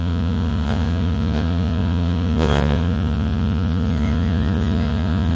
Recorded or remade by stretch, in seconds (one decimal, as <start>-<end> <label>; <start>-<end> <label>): 0.0-5.3 remade